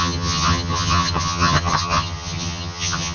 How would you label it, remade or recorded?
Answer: remade